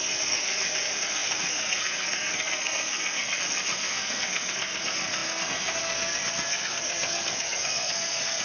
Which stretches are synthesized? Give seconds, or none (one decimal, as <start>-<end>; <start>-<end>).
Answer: 0.0-8.4

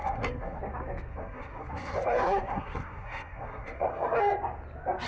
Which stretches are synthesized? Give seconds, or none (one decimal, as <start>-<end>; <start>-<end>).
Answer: 0.0-0.6; 1.1-4.2

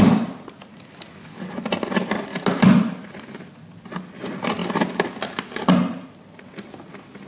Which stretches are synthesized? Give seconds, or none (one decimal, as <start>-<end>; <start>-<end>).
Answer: none

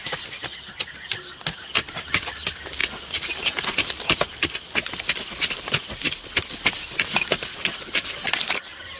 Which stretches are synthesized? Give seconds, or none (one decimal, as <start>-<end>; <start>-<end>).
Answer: none

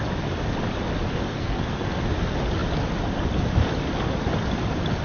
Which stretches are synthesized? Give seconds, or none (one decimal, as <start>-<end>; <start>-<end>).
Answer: 1.3-2.0

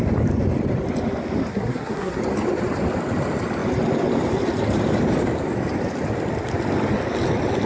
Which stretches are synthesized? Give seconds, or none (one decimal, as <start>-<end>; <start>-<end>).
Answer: 1.5-2.2